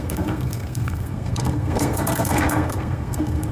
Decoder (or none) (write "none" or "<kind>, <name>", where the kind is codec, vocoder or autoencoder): codec, SNAC